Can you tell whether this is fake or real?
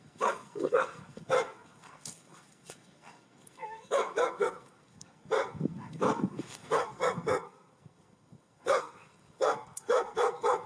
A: fake